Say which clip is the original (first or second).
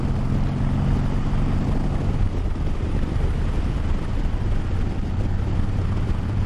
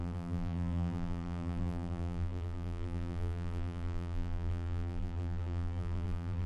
first